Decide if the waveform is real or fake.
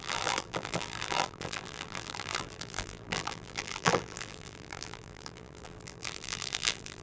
fake